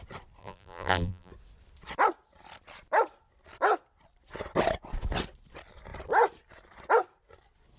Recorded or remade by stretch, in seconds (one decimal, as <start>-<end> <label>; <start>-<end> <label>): 0.0-0.4 recorded; 0.4-1.3 remade; 1.3-7.8 recorded